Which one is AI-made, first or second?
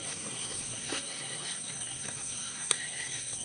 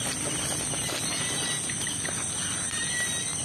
first